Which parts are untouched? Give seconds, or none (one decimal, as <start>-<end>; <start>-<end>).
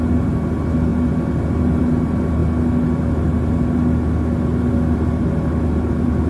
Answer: 0.0-6.3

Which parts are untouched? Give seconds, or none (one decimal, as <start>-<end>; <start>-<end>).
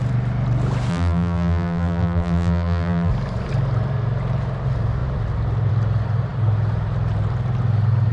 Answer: 0.0-0.9; 3.1-8.1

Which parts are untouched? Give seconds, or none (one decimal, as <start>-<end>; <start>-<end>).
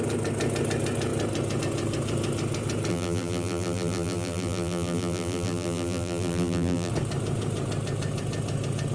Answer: 0.0-2.9; 6.9-8.9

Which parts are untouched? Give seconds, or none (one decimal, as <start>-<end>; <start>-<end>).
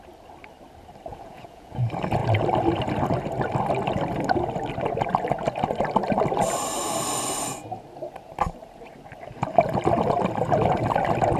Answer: 0.0-1.1; 1.8-11.4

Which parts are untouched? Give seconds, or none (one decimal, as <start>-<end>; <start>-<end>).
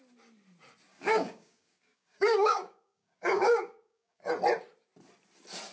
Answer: 0.0-0.9; 4.3-5.7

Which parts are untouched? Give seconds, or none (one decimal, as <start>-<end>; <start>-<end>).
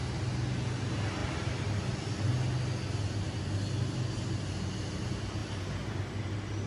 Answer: 0.0-5.4; 6.0-6.7